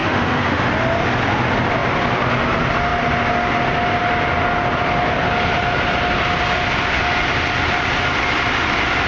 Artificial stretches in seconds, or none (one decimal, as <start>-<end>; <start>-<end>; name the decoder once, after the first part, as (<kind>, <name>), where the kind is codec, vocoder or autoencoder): 0.0-0.7 (autoencoder, DAC-VAE)